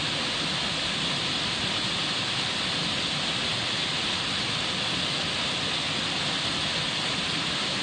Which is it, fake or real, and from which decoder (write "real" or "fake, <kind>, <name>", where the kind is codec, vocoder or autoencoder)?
real